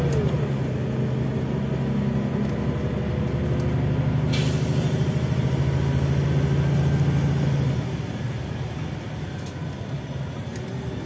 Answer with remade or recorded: recorded